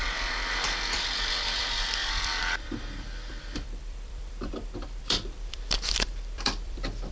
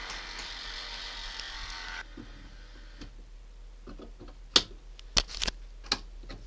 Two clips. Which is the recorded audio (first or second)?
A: second